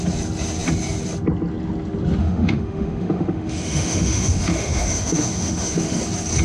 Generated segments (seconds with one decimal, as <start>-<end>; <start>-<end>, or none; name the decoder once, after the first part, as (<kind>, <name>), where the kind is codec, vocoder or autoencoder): 2.2-6.0 (autoencoder, DAC-VAE)